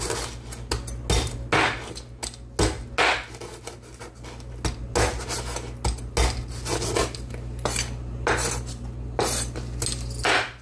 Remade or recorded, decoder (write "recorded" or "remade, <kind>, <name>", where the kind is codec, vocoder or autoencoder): recorded